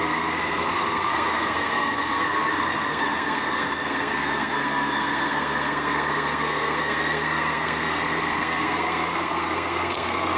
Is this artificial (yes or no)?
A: yes